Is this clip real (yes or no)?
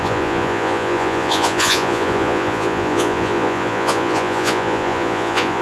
no